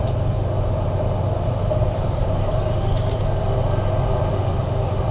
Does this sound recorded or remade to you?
remade